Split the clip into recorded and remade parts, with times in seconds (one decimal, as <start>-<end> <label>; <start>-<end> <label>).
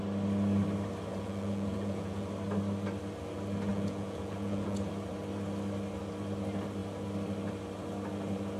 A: 0.0-1.1 recorded; 1.1-2.3 remade; 2.3-3.7 recorded; 3.7-4.9 remade; 4.9-8.6 recorded